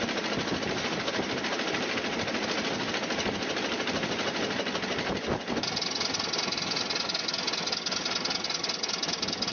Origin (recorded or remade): recorded